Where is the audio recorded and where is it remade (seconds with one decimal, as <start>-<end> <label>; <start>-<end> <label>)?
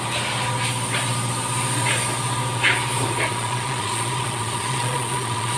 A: 0.0-3.3 recorded; 3.3-5.6 remade